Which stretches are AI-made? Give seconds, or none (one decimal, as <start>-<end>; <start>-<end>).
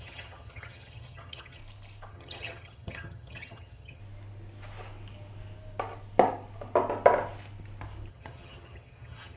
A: 0.0-1.6; 2.1-4.0; 8.1-9.4